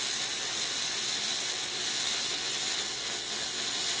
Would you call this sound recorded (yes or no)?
yes